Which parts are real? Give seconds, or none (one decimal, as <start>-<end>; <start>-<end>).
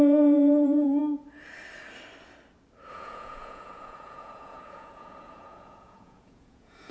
1.0-2.9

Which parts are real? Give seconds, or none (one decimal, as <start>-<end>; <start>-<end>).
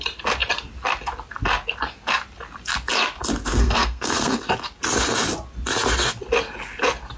0.0-3.5; 4.5-7.2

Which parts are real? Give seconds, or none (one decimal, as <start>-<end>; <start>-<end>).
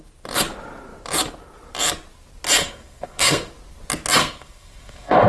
0.0-2.6; 3.5-4.2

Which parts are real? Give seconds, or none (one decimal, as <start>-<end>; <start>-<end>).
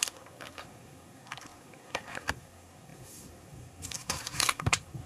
none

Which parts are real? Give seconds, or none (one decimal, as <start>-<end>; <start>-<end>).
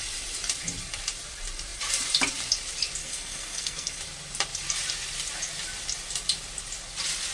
0.0-3.0; 4.0-7.3